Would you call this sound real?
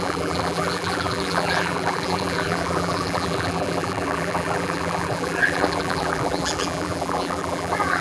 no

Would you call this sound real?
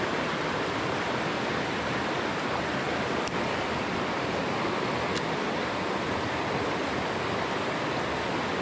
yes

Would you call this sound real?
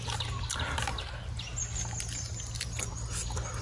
yes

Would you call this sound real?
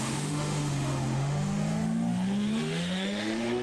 no